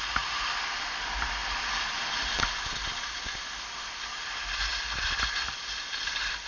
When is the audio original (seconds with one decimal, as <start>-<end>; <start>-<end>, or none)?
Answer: 0.0-6.5